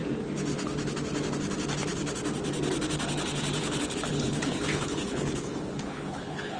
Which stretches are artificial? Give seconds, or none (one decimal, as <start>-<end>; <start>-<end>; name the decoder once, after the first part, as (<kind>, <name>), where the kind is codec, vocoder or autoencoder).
3.6-6.6 (codec, HILCodec)